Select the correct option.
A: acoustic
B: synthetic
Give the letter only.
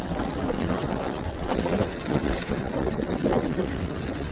B